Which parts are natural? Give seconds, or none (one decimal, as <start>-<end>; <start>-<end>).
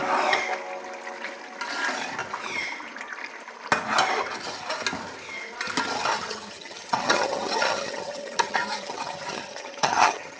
0.0-6.1